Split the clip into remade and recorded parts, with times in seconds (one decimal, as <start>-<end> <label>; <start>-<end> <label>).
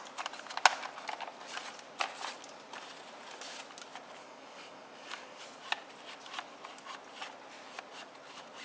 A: 0.0-4.2 recorded; 4.2-5.4 remade; 5.4-8.6 recorded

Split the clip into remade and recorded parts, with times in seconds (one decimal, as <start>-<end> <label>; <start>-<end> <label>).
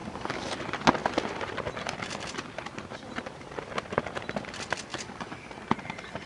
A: 0.0-0.5 remade; 0.5-4.9 recorded; 4.9-5.5 remade; 5.5-6.3 recorded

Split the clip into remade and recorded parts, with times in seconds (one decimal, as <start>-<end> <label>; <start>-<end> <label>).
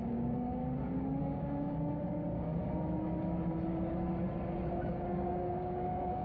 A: 0.0-0.6 remade; 0.6-1.2 recorded; 1.2-2.5 remade; 2.5-4.7 recorded; 4.7-6.2 remade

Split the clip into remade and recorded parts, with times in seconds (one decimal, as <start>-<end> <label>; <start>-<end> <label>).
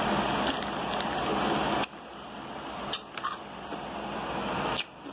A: 0.0-5.1 recorded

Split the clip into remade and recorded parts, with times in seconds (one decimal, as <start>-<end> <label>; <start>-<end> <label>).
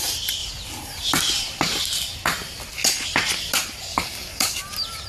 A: 0.0-3.9 recorded; 3.9-4.6 remade; 4.6-5.1 recorded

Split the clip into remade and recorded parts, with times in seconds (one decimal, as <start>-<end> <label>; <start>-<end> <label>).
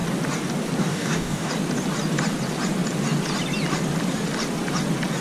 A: 0.0-0.9 recorded; 0.9-1.5 remade; 1.5-5.2 recorded